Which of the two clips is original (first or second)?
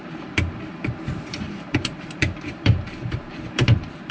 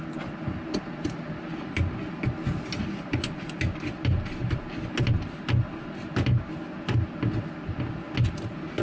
second